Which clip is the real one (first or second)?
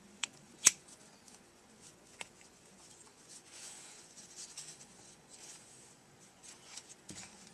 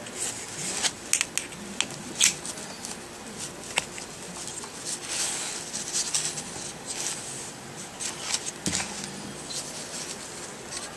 second